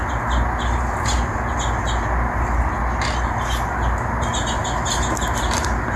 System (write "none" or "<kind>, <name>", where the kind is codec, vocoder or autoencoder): none